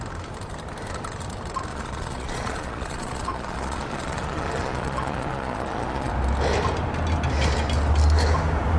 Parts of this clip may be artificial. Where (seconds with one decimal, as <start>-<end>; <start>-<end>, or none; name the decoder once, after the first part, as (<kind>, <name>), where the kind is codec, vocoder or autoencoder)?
1.7-6.1 (vocoder, Vocos)